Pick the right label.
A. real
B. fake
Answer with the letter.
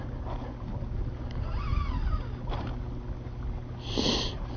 A